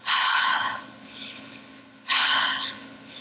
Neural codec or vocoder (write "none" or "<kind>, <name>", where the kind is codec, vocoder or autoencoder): codec, HILCodec